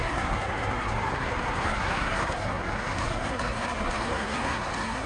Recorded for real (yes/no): no